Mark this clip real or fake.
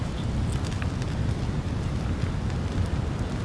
real